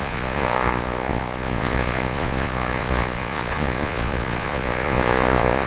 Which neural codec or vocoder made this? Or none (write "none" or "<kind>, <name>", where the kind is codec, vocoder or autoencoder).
vocoder, Vocos